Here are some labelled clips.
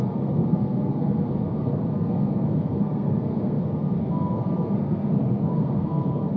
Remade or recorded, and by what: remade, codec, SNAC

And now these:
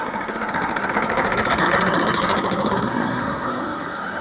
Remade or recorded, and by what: remade, codec, SNAC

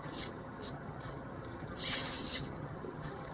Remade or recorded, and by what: remade, vocoder, HiFi-GAN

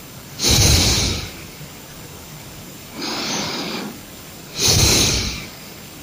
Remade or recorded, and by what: remade, codec, DAC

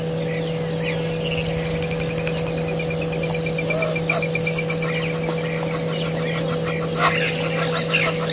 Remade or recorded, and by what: recorded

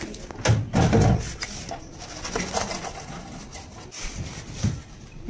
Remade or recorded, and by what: recorded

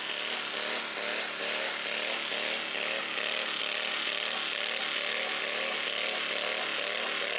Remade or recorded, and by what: recorded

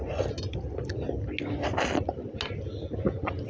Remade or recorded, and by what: recorded